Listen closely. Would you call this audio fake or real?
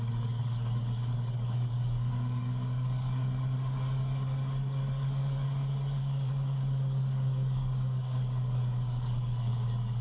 fake